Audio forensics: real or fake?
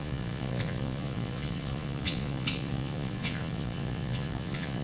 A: fake